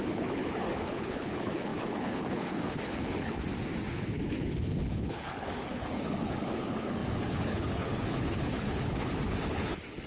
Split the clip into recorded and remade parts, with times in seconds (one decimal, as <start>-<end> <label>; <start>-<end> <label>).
0.0-3.4 remade; 3.4-3.9 recorded; 3.9-10.1 remade